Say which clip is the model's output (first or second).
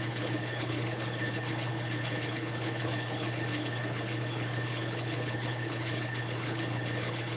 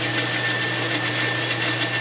first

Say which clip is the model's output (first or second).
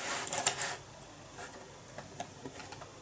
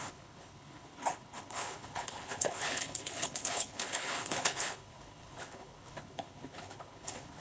second